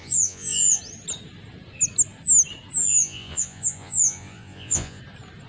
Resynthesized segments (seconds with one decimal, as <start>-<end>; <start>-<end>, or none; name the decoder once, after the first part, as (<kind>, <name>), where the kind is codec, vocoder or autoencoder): 0.0-0.8 (vocoder, Vocos); 2.8-5.0